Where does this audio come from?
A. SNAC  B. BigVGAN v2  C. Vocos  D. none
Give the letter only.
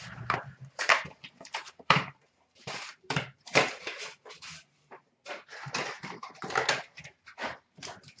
B